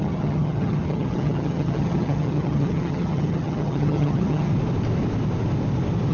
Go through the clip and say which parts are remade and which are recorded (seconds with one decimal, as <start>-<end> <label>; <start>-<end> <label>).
0.0-4.5 remade; 4.5-6.1 recorded